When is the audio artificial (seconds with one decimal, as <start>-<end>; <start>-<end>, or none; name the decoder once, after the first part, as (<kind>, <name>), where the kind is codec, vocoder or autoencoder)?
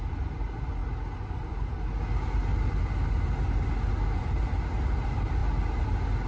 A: none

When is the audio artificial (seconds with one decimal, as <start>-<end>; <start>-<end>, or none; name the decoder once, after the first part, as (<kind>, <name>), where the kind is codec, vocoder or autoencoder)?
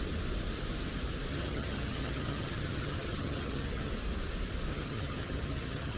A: 1.3-3.9 (vocoder, HiFi-GAN); 4.7-6.0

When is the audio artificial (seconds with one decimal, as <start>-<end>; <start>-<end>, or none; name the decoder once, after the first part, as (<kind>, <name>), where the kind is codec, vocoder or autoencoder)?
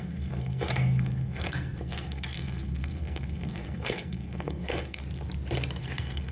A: 0.0-5.0 (codec, SNAC); 5.8-6.3